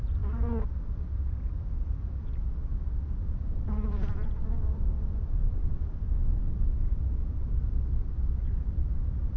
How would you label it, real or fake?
real